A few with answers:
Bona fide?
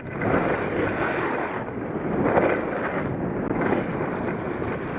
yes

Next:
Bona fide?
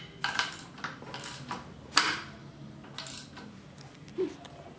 yes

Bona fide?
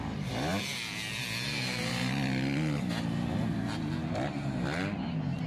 yes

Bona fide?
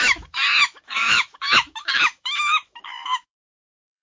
no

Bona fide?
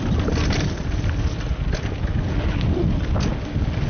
yes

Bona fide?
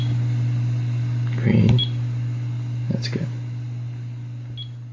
yes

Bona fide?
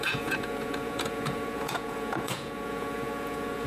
no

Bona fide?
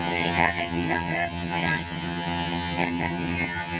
no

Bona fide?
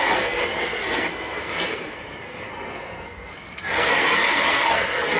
no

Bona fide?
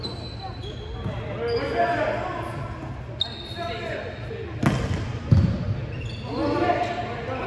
yes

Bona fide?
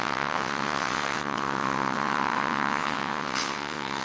no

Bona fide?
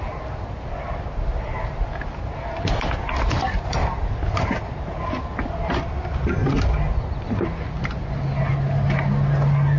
yes